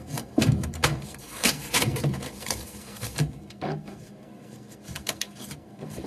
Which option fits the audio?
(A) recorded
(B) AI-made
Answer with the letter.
B